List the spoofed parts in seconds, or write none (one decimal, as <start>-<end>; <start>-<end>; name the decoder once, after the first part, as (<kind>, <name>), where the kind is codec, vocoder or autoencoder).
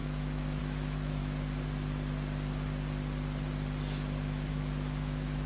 0.0-1.2 (autoencoder, DAC-VAE); 4.5-5.5